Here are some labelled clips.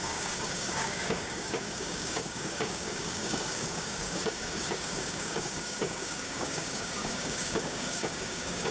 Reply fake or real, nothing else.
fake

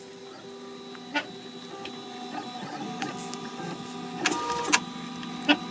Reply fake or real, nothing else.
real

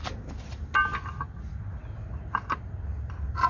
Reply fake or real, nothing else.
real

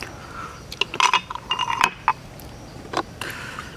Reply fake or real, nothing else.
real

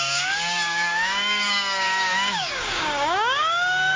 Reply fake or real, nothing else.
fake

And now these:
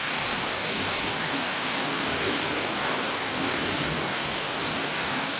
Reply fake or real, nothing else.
fake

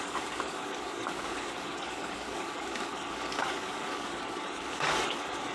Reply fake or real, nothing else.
fake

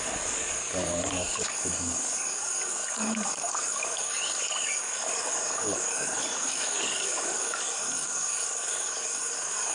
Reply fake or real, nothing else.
fake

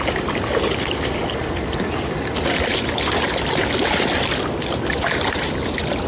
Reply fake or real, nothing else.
real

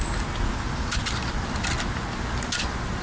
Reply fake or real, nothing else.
real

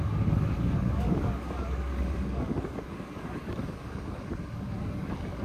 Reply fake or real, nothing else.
fake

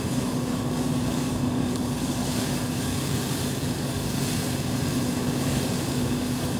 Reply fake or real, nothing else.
fake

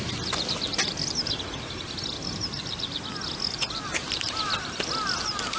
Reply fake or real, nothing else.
real